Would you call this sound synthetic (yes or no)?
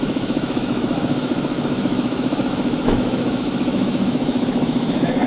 yes